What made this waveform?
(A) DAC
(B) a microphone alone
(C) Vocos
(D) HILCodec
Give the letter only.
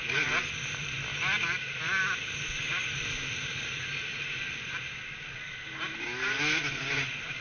B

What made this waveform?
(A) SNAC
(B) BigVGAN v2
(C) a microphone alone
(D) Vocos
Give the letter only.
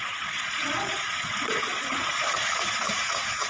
D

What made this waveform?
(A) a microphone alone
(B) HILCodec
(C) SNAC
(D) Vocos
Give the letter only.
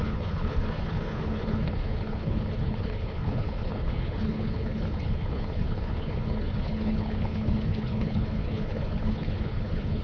B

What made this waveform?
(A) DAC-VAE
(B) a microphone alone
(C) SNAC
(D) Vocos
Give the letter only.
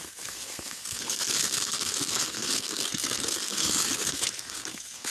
C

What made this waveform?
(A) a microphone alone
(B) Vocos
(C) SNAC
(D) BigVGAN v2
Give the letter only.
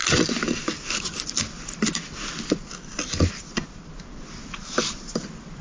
A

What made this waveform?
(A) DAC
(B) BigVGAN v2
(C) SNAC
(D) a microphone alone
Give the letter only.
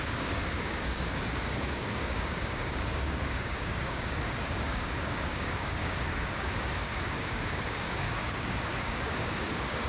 A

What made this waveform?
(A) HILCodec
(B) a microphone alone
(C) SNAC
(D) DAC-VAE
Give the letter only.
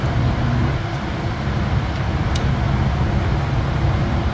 B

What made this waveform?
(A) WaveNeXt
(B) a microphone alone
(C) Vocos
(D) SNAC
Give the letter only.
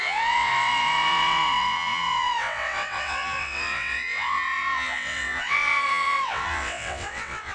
A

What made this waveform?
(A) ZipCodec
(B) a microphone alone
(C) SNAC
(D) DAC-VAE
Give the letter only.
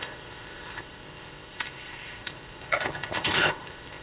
A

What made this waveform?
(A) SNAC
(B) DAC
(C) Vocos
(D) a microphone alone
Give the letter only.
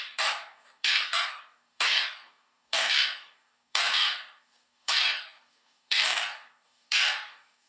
B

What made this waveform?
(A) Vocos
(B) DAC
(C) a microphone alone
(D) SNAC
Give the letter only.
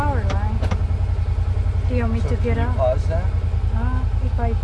C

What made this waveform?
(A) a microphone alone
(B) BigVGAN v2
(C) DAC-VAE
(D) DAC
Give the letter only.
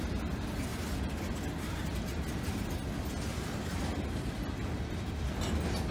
A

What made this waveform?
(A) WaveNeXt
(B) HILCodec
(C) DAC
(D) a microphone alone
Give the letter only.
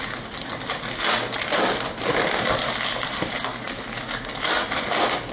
D